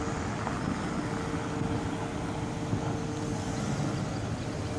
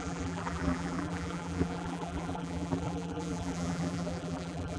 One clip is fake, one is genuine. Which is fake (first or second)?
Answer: second